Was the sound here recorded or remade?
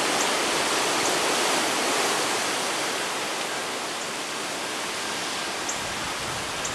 recorded